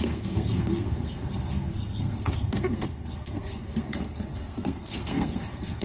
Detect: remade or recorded remade